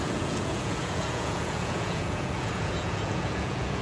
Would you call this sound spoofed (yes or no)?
yes